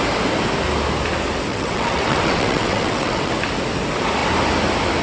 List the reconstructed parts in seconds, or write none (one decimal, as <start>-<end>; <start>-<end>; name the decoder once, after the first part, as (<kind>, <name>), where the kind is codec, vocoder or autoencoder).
1.5-3.3 (vocoder, WaveNeXt)